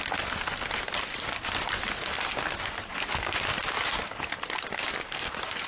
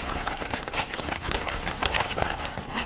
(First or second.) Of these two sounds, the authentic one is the first